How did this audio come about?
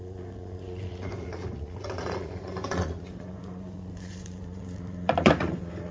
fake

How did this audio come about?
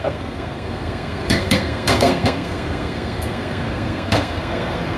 fake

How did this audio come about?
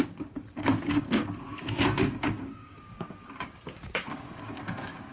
fake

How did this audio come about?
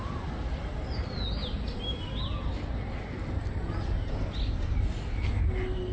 real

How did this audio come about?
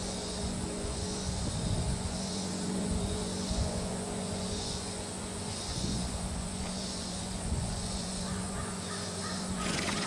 fake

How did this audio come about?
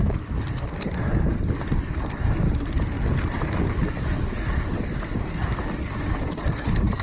real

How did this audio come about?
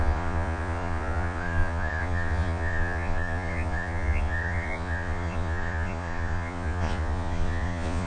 fake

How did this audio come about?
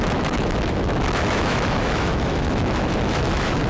fake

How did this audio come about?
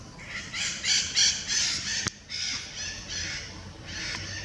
real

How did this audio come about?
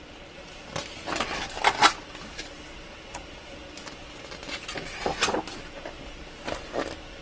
real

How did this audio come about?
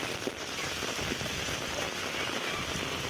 real